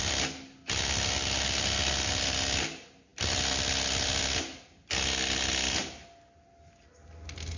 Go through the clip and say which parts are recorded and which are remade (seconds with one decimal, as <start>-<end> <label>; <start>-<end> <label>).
0.0-7.6 recorded